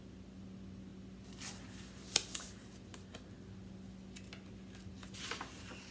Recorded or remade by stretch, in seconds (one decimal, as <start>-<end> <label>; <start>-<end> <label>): 0.0-5.9 recorded